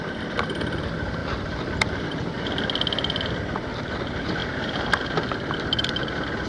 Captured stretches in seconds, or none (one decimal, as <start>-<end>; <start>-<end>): 0.0-1.2; 2.4-4.4; 5.0-6.5